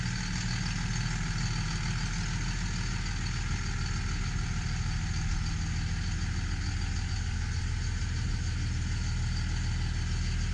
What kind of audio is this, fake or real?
real